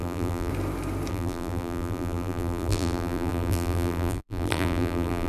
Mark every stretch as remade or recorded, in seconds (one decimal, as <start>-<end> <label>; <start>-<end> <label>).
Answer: 0.0-0.5 remade; 0.5-1.1 recorded; 1.1-5.3 remade